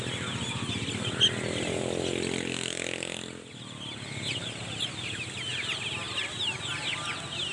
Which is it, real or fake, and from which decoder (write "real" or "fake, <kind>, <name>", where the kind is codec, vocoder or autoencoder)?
real